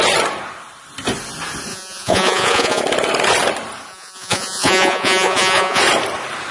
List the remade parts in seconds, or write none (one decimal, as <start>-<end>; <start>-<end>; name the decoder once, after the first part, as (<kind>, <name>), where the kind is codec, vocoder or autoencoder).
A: 1.7-2.8 (vocoder, Vocos); 3.9-5.8